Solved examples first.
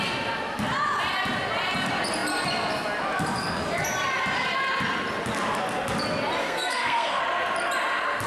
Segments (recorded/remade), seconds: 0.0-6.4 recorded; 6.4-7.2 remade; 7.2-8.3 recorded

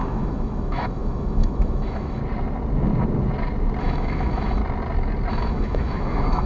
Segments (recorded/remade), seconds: 0.0-2.2 remade; 2.2-3.8 recorded; 3.8-4.6 remade; 4.6-5.3 recorded; 5.3-6.5 remade

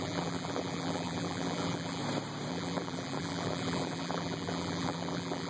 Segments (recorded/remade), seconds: 0.0-2.0 remade; 2.0-2.5 recorded; 2.5-5.5 remade

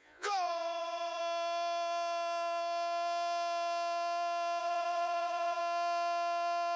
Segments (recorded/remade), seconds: 0.0-1.2 remade; 1.2-4.6 recorded; 4.6-5.6 remade; 5.6-6.8 recorded

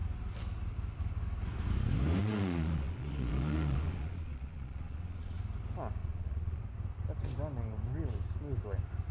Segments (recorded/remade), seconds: 0.0-2.2 recorded; 2.2-5.4 remade; 5.4-6.0 recorded; 6.0-6.6 remade; 6.6-9.1 recorded

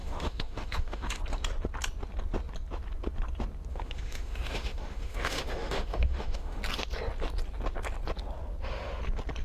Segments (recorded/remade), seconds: 0.0-1.2 remade; 1.2-3.7 recorded; 3.7-6.6 remade; 6.6-9.4 recorded

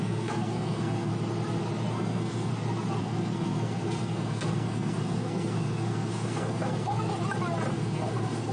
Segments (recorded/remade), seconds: 0.0-1.1 remade; 1.1-1.9 recorded; 1.9-2.5 remade; 2.5-3.0 recorded; 3.0-7.1 remade; 7.1-7.7 recorded; 7.7-8.5 remade

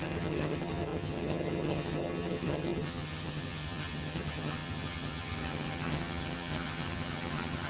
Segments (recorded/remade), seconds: 0.0-7.7 remade